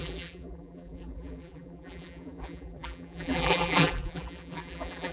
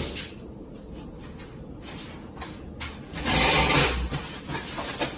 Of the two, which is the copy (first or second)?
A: first